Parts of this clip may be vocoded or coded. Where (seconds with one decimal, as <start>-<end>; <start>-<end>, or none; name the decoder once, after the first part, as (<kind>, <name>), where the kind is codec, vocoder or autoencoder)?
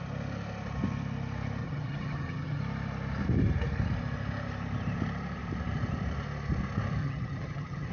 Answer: 1.6-2.6 (vocoder, HiFi-GAN); 7.0-7.9